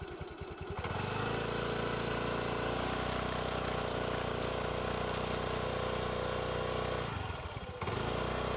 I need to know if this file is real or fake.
real